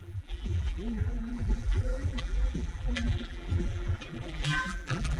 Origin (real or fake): fake